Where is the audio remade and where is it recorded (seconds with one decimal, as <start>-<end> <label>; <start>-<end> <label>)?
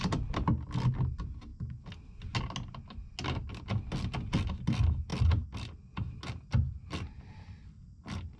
0.0-8.4 recorded